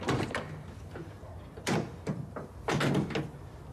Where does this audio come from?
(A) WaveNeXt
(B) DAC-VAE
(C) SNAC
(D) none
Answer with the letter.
D